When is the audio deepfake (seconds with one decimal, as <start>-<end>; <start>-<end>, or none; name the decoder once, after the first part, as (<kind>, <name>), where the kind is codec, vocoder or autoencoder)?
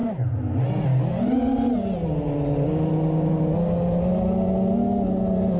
none